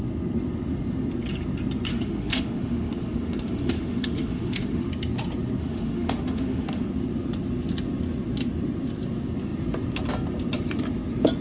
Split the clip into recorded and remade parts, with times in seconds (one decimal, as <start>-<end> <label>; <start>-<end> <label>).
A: 0.0-1.9 recorded; 1.9-4.9 remade; 4.9-5.6 recorded; 5.6-6.8 remade; 6.8-11.4 recorded